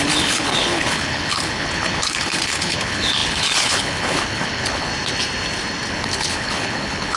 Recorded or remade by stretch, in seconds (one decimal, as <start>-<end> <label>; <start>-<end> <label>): 0.0-4.9 remade; 4.9-5.9 recorded; 5.9-7.2 remade

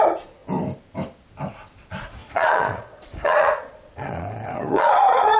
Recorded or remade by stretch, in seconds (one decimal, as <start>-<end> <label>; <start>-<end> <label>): 0.0-2.2 recorded; 2.2-5.4 remade